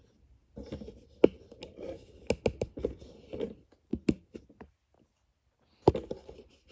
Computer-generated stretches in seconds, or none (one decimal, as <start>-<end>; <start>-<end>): none